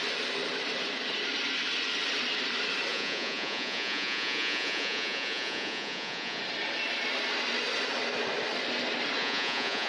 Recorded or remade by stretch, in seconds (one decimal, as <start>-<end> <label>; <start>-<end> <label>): 0.0-2.9 recorded; 2.9-6.4 remade; 6.4-9.2 recorded; 9.2-9.9 remade